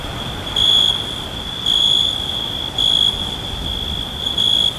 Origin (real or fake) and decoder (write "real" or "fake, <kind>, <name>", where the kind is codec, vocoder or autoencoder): real